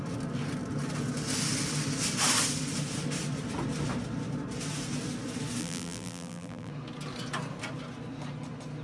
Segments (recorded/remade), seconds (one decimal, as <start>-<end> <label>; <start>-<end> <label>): 0.0-5.6 recorded; 5.6-6.7 remade; 6.7-8.8 recorded